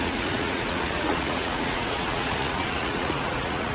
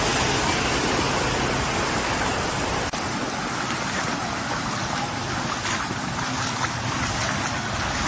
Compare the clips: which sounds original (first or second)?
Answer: second